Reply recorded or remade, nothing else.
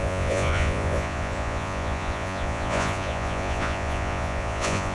remade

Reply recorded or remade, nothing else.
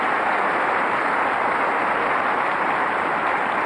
recorded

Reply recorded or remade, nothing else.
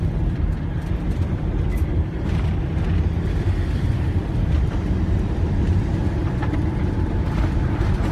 remade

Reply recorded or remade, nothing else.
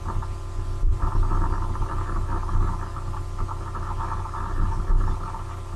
recorded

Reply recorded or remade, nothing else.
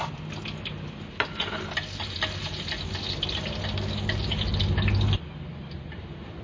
recorded